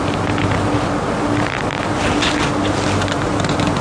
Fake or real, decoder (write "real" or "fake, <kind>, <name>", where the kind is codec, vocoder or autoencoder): real